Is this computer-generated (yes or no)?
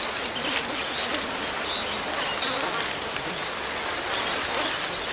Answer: no